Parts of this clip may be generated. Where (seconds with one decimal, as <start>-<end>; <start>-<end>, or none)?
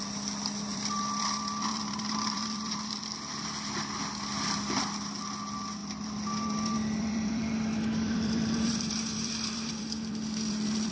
0.7-3.0; 5.8-10.9